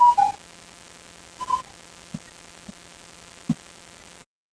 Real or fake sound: real